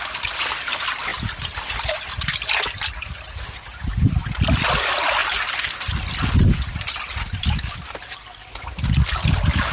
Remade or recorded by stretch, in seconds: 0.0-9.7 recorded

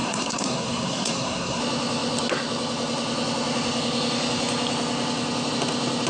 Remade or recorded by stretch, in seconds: 0.0-1.6 remade; 1.6-6.1 recorded

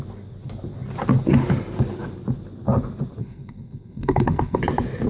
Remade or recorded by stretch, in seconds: 0.0-3.2 recorded; 3.2-4.6 remade; 4.6-5.1 recorded

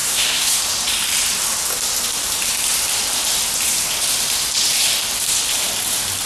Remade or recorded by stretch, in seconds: 0.0-0.6 remade; 0.6-6.3 recorded

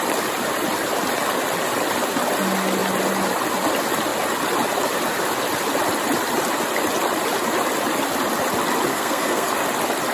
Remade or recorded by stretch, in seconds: 0.0-8.9 recorded; 8.9-9.5 remade; 9.5-10.1 recorded

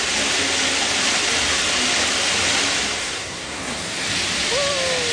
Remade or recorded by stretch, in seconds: 0.0-3.0 recorded; 3.0-3.8 remade; 3.8-5.1 recorded

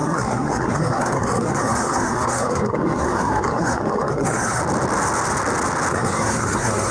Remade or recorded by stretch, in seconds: 0.0-4.6 remade; 4.6-5.9 recorded; 5.9-6.9 remade

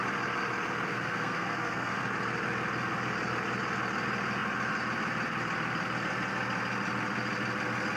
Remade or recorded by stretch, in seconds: 0.0-0.9 recorded; 0.9-2.0 remade; 2.0-8.0 recorded